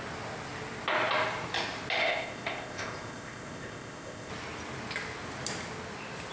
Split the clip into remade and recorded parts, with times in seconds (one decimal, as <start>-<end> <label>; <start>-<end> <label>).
0.0-2.0 recorded; 2.0-4.3 remade; 4.3-6.3 recorded